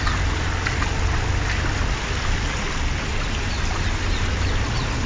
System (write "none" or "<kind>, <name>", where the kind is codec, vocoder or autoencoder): none